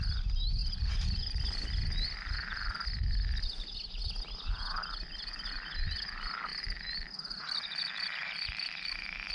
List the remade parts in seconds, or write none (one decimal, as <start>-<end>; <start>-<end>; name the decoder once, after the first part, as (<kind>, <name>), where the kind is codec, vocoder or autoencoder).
0.6-1.4 (vocoder, BigVGAN v2); 6.5-9.3